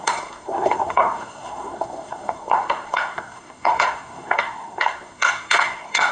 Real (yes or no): no